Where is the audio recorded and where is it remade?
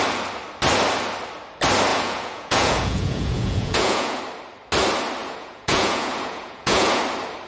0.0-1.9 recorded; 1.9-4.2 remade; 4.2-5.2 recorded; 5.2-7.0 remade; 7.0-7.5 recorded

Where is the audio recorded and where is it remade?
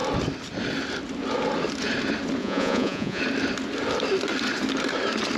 0.0-2.4 recorded; 2.4-3.2 remade; 3.2-5.4 recorded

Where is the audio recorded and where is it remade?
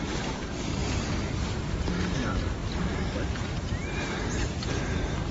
0.0-2.6 remade; 2.6-3.4 recorded; 3.4-5.3 remade